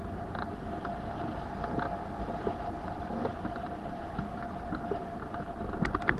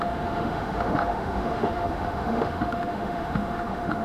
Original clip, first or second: first